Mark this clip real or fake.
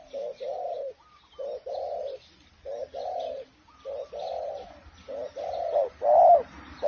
real